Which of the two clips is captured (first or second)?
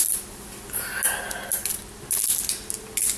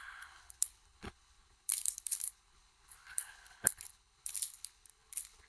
first